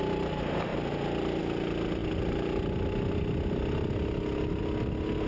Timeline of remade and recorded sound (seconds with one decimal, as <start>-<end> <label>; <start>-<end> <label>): 0.0-5.3 recorded

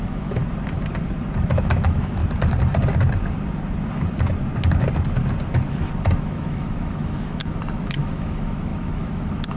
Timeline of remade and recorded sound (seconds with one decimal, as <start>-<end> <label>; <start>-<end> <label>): 0.0-0.4 remade; 0.4-1.4 recorded; 1.4-2.2 remade; 2.2-6.2 recorded; 6.2-7.4 remade; 7.4-8.0 recorded; 8.0-9.6 remade